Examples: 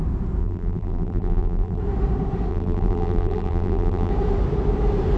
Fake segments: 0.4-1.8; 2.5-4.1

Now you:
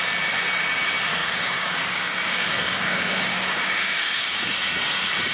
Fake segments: 1.2-4.4

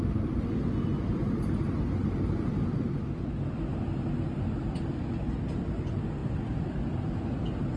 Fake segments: 6.2-7.2